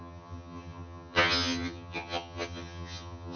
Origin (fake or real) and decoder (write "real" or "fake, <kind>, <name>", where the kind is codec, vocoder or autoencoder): fake, vocoder, HiFi-GAN